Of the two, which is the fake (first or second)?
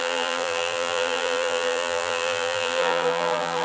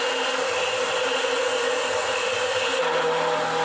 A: first